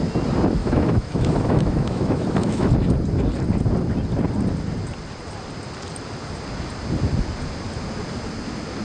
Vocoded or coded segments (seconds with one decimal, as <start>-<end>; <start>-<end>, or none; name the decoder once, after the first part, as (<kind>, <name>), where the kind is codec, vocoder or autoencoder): 0.6-2.7 (autoencoder, DAC-VAE)

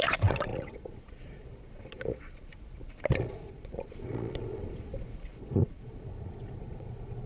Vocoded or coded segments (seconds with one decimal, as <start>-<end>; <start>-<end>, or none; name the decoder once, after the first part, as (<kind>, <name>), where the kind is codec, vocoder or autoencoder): 0.0-7.3 (vocoder, Vocos)

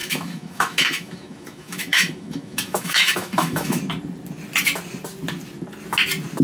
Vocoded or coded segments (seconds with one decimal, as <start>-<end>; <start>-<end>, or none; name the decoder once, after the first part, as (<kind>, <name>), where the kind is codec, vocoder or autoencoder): 0.0-3.8 (autoencoder, DAC-VAE)

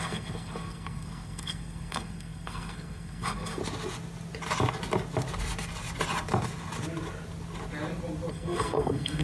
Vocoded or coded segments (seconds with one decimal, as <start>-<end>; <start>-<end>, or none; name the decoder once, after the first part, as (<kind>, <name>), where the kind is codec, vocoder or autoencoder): 0.0-3.6 (codec, SNAC); 8.3-9.2

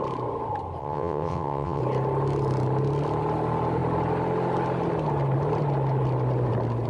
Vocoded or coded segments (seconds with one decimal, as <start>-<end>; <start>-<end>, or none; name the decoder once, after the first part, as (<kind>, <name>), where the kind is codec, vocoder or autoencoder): 0.8-1.8 (vocoder, WaveNeXt)

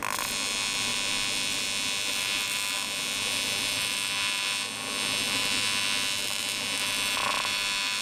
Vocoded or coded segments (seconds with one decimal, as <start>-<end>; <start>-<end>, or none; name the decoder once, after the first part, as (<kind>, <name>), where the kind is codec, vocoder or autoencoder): none